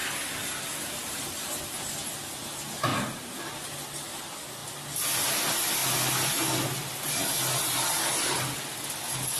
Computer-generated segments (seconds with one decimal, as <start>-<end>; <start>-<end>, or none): 0.0-1.6; 2.9-3.4